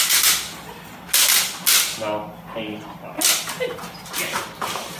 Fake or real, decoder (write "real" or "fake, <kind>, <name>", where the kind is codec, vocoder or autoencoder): real